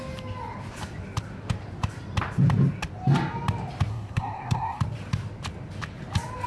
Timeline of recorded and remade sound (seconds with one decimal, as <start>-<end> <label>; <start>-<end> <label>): 0.0-3.9 recorded; 3.9-4.8 remade; 4.8-6.5 recorded